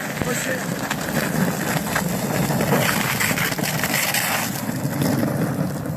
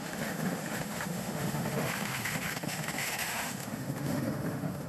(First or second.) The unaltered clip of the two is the first